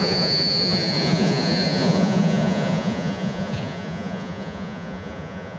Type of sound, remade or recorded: remade